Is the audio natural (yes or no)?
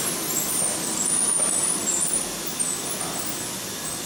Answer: yes